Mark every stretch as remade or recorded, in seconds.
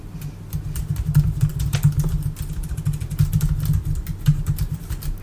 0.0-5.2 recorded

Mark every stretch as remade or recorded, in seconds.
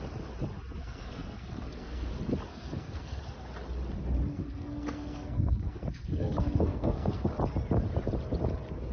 0.0-0.8 recorded; 0.8-2.1 remade; 2.1-2.5 recorded; 2.5-3.2 remade; 3.2-4.3 recorded; 4.3-7.3 remade; 7.3-8.9 recorded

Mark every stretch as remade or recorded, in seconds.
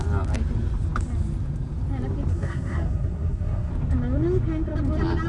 0.0-2.3 recorded; 2.3-3.7 remade; 3.7-5.3 recorded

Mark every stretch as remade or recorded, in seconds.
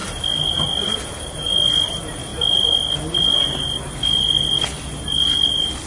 0.0-5.9 recorded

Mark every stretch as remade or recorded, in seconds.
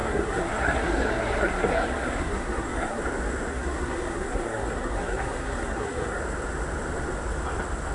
0.0-3.0 remade; 3.0-3.5 recorded; 3.5-6.2 remade; 6.2-7.9 recorded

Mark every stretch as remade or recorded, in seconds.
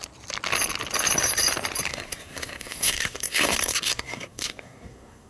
0.0-1.9 recorded; 1.9-5.3 remade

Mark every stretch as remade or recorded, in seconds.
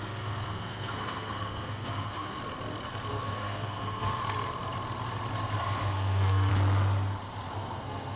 0.0-2.4 remade; 2.4-3.1 recorded; 3.1-4.2 remade; 4.2-5.6 recorded; 5.6-6.5 remade; 6.5-7.5 recorded; 7.5-8.2 remade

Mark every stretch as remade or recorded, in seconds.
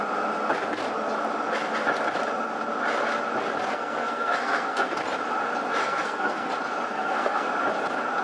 0.0-3.7 recorded; 3.7-5.0 remade; 5.0-5.8 recorded; 5.8-6.5 remade; 6.5-6.9 recorded; 6.9-7.5 remade; 7.5-8.2 recorded